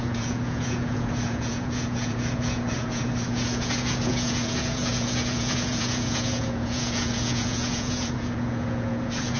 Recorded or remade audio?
remade